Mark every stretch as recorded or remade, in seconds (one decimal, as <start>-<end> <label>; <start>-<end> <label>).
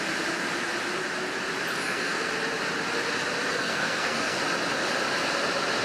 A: 0.0-1.7 recorded; 1.7-2.3 remade; 2.3-3.5 recorded; 3.5-4.4 remade; 4.4-5.8 recorded